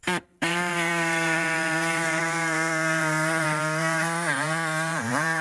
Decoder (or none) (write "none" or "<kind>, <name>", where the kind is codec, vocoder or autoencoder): vocoder, BigVGAN v2